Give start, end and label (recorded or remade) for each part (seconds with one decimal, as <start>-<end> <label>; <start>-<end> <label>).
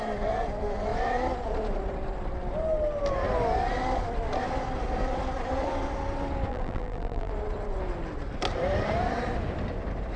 0.0-6.5 recorded; 6.5-7.3 remade; 7.3-10.2 recorded